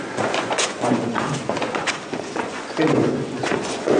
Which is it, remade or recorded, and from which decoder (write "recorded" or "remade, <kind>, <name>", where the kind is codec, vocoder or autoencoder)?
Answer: remade, vocoder, Vocos